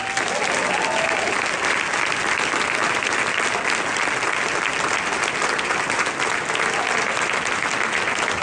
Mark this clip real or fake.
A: real